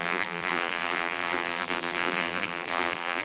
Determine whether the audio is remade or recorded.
remade